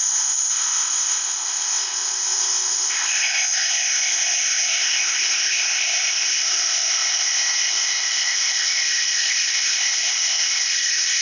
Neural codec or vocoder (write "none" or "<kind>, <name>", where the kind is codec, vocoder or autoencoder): codec, ZipCodec